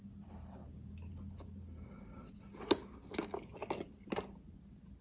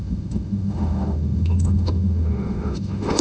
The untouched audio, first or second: first